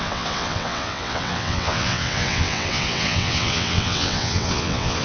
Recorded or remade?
remade